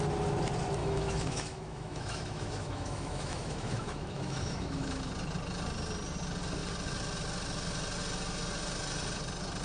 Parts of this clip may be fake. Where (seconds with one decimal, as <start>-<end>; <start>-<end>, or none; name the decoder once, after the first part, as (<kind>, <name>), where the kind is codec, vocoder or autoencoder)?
0.8-5.1 (autoencoder, DAC-VAE)